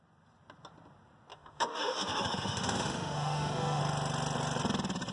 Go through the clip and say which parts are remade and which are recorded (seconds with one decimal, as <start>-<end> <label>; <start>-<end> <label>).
0.0-1.3 recorded; 1.3-3.8 remade; 3.8-5.1 recorded